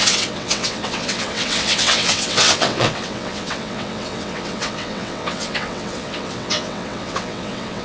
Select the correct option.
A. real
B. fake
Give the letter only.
B